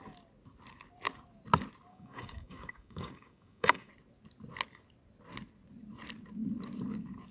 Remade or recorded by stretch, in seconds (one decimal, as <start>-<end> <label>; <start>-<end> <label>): 0.0-1.9 recorded; 1.9-3.9 remade; 3.9-7.3 recorded